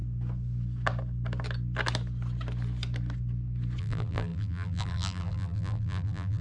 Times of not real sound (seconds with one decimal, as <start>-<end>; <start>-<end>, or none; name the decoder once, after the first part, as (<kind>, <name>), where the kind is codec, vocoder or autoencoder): 3.8-6.4 (vocoder, BigVGAN v2)